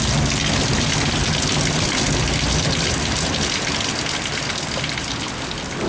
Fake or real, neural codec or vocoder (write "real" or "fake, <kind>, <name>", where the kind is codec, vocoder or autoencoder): real